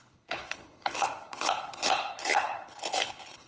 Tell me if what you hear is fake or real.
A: fake